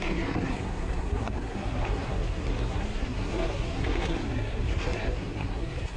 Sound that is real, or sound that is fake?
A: fake